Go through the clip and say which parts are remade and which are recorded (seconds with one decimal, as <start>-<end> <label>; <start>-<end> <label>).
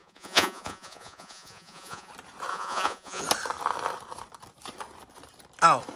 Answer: 0.0-2.1 remade; 2.1-2.5 recorded; 2.5-3.2 remade; 3.2-6.0 recorded